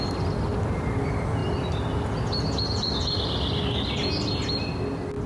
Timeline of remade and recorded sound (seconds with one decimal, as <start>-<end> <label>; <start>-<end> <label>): 0.0-5.3 recorded